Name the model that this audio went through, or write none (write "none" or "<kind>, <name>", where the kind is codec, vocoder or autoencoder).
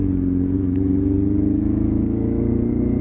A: codec, DAC